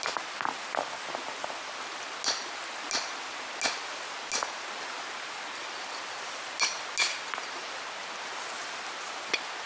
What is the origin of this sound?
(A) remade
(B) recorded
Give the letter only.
B